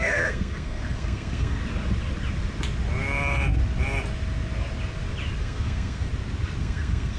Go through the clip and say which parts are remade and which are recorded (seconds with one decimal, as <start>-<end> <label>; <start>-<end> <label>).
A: 0.0-1.6 remade; 1.6-5.4 recorded; 5.4-6.1 remade; 6.1-6.6 recorded; 6.6-7.2 remade